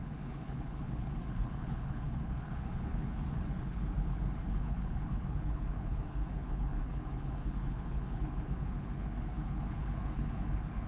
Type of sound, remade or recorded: remade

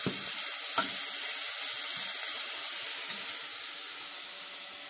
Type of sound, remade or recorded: recorded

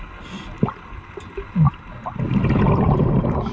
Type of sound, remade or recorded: recorded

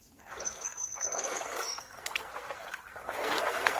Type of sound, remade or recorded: remade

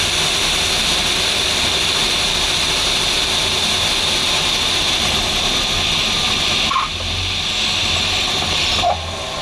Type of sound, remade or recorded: recorded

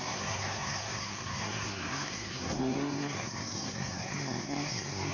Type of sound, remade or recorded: remade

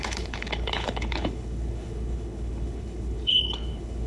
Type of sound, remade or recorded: remade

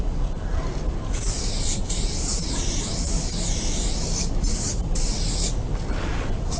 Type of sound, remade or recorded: recorded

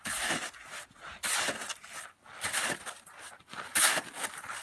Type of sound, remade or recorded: recorded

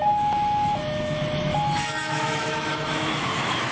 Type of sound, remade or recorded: remade